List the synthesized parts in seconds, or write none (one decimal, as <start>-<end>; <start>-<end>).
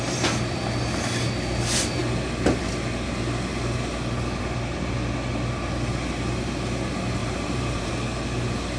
7.2-7.9